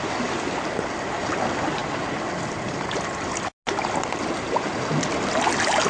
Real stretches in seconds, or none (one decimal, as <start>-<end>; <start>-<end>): 0.0-5.9